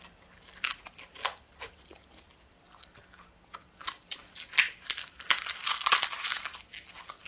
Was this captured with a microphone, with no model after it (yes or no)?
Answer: no